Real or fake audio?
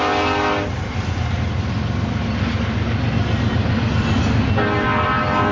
real